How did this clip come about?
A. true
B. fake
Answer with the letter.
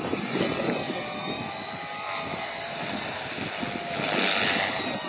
A